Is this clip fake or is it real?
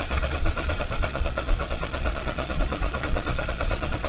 fake